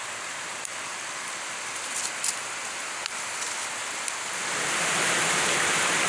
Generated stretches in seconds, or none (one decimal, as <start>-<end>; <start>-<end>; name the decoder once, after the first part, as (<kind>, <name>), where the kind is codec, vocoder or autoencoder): 0.0-0.7 (vocoder, BigVGAN v2); 4.4-6.1